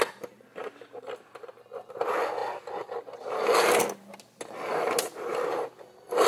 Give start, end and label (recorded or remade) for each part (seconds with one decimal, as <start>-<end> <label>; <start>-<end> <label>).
0.0-6.3 recorded